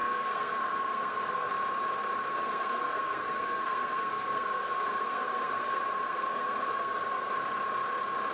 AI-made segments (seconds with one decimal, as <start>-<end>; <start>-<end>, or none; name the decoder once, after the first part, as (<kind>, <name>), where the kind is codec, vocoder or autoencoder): 0.0-1.5 (codec, SNAC); 2.3-7.3